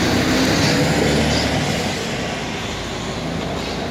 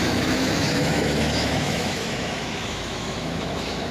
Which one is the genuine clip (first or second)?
first